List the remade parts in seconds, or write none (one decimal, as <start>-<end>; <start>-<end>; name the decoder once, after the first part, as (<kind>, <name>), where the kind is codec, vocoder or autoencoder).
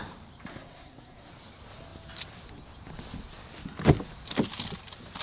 0.5-1.3 (codec, SNAC)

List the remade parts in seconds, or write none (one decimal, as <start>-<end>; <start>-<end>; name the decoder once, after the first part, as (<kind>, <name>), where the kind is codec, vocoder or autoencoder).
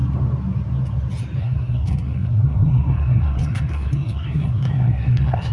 1.4-5.5 (codec, SNAC)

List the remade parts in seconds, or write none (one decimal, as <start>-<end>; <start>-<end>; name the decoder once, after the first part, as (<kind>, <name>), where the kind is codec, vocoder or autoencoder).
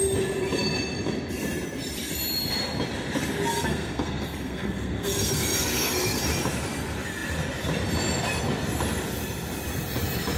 3.5-6.2 (codec, SNAC)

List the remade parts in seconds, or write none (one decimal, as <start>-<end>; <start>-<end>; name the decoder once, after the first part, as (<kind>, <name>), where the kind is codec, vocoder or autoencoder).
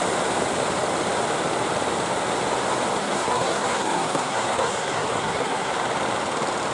3.0-5.7 (codec, SNAC)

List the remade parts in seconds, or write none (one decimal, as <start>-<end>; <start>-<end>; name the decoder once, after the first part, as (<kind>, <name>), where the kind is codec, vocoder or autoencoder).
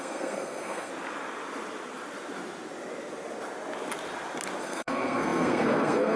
0.0-0.9 (codec, SNAC); 4.6-6.2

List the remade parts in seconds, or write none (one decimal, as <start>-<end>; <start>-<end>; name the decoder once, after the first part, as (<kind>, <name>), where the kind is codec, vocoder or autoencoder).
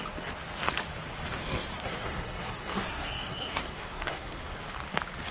1.7-4.6 (codec, SNAC)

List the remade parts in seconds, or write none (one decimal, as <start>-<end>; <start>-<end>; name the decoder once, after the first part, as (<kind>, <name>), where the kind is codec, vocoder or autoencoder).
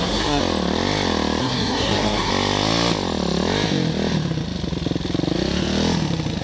0.0-0.4 (codec, SNAC); 1.4-2.3